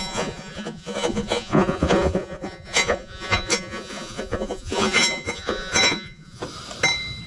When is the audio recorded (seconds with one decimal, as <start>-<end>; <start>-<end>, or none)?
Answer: 6.4-7.3